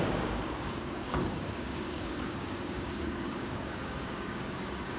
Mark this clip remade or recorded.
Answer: remade